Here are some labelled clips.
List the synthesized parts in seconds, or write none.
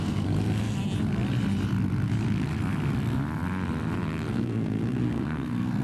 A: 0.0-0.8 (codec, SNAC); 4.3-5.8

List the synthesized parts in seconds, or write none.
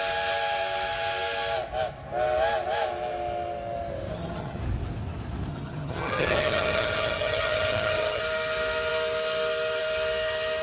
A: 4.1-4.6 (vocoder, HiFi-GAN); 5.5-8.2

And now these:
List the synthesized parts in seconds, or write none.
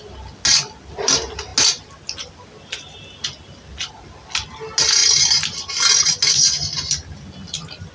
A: none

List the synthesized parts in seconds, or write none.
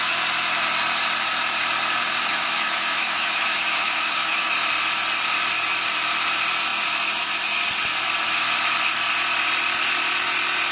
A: 2.3-4.5 (autoencoder, DAC-VAE)